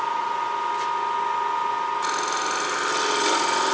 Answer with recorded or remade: recorded